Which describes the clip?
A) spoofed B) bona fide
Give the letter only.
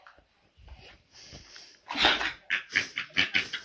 A